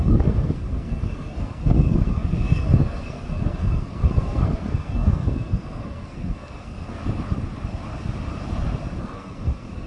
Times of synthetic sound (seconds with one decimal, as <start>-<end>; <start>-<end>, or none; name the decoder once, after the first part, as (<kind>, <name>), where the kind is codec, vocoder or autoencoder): 0.0-7.0 (codec, SNAC); 9.0-9.9